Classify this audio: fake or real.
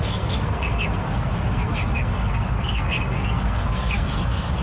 fake